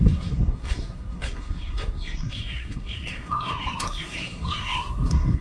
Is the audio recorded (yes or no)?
no